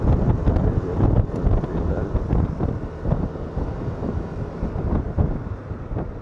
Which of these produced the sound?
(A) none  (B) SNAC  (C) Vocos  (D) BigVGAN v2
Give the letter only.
A